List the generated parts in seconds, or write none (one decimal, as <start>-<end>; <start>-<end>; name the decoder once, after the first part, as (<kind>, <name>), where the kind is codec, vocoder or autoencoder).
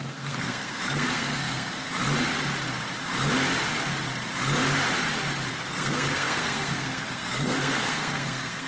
0.0-1.9 (codec, SNAC); 5.5-8.7